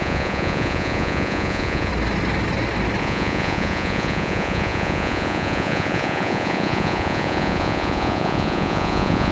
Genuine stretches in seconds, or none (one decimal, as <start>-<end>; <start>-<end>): 1.9-3.0

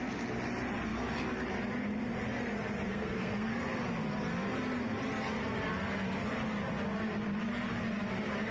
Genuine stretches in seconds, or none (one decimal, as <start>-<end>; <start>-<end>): 0.0-2.9; 3.8-8.5